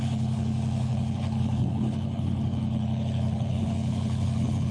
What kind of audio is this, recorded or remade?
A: remade